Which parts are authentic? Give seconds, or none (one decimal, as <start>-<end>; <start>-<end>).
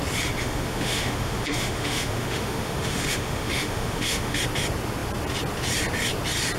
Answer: 0.0-0.4; 4.4-6.6